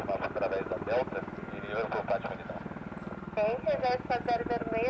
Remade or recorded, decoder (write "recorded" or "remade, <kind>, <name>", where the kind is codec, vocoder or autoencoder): recorded